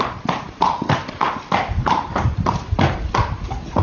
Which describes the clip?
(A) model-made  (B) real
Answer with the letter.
B